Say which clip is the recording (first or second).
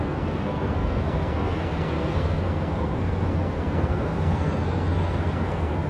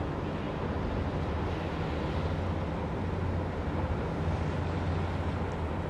second